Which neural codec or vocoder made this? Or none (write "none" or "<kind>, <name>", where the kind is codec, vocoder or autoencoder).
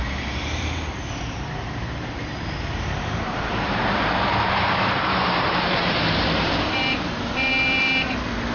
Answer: vocoder, BigVGAN v2